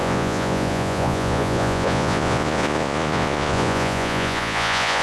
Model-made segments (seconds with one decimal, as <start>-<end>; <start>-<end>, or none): 0.0-5.0